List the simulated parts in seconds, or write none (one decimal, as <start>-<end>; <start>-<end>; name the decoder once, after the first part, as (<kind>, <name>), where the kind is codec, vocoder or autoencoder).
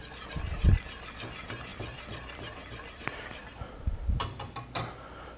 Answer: 1.7-4.4 (vocoder, BigVGAN v2)